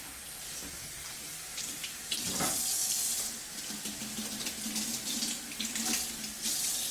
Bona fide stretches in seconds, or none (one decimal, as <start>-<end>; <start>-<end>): 0.0-1.5; 2.4-6.9